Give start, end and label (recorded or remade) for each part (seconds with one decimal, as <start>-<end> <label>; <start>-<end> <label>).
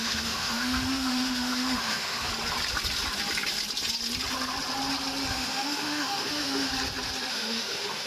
0.0-2.3 remade; 2.3-5.3 recorded; 5.3-6.7 remade; 6.7-7.3 recorded; 7.3-8.1 remade